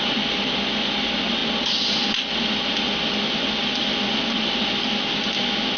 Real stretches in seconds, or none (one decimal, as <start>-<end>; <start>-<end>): 0.0-5.8